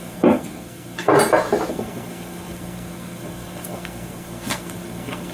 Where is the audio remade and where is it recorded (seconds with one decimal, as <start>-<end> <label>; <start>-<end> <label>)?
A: 0.0-1.1 remade; 1.1-1.7 recorded; 1.7-5.3 remade